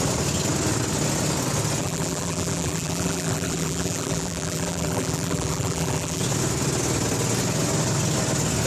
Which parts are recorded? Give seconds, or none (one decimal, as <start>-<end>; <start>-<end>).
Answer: 0.0-1.8; 6.2-8.7